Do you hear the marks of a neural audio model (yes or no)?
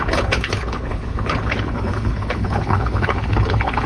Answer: yes